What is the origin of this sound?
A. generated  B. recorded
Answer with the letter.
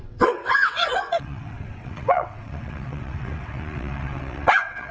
A